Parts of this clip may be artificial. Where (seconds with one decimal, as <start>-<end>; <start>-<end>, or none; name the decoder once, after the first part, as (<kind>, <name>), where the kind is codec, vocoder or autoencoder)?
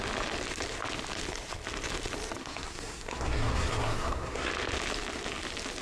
2.4-4.5 (codec, SNAC)